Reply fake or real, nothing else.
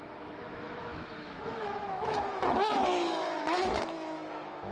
fake